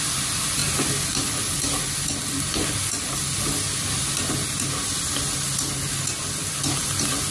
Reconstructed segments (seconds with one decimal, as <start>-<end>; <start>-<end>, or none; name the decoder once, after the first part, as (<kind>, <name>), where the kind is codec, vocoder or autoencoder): none